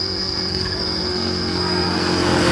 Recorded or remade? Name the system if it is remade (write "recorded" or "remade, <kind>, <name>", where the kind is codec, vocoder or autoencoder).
remade, codec, SNAC